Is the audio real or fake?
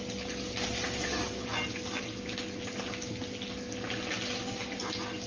real